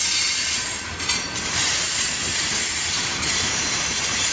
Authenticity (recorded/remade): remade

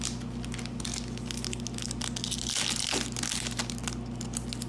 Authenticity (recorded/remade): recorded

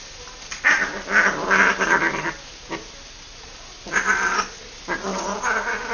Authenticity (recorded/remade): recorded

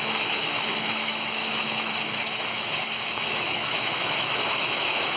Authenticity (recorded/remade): remade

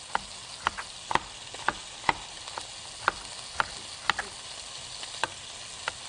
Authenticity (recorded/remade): recorded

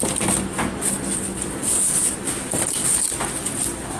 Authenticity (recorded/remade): recorded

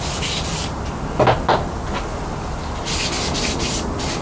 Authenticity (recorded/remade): recorded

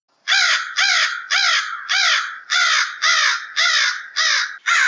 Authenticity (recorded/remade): recorded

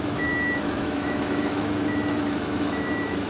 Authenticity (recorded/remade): remade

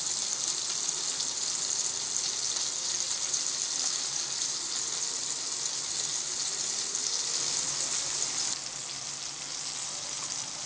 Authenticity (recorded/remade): recorded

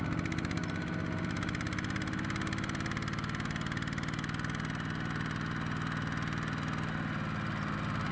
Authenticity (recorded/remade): recorded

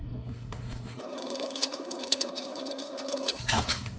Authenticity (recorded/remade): remade